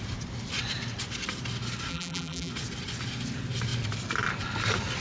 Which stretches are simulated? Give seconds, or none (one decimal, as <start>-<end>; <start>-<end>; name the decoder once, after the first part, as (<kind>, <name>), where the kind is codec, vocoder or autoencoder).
1.9-2.5 (vocoder, BigVGAN v2)